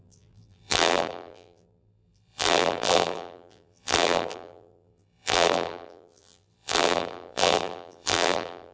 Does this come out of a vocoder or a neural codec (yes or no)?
yes